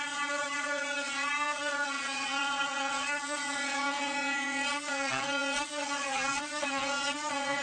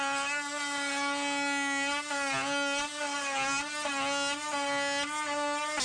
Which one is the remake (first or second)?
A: first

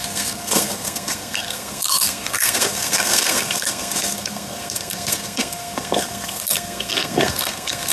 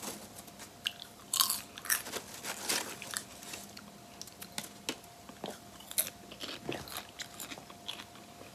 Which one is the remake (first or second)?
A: first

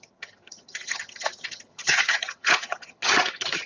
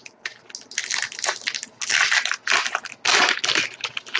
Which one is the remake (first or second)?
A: first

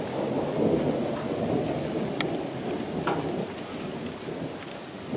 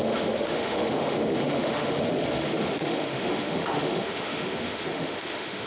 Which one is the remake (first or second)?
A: second